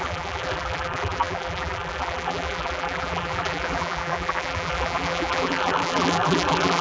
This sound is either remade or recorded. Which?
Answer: remade